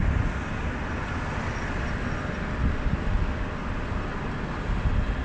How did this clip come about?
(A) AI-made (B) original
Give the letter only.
B